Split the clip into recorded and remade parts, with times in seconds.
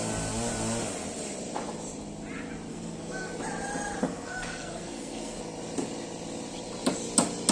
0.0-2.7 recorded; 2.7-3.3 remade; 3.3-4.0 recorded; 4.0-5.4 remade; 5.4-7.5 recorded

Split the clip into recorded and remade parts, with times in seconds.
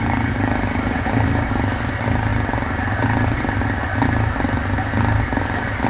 0.0-5.9 recorded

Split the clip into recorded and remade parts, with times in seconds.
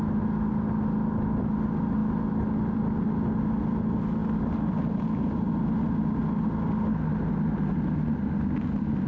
0.0-9.1 recorded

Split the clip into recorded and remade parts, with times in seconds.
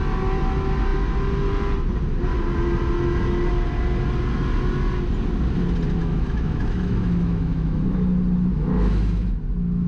0.0-6.0 recorded; 6.0-7.8 remade; 7.8-8.5 recorded; 8.5-9.4 remade; 9.4-9.9 recorded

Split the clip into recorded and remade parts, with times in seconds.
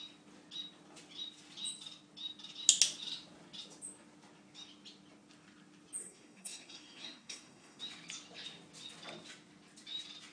0.0-6.0 recorded; 6.0-7.8 remade; 7.8-10.3 recorded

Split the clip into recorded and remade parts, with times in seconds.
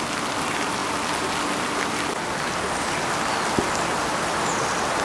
0.0-5.0 recorded